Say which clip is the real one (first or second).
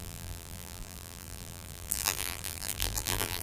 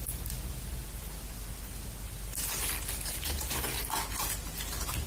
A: second